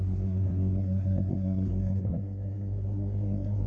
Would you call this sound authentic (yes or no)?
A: no